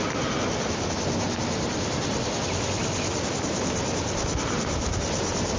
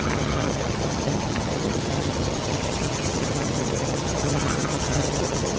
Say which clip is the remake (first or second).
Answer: second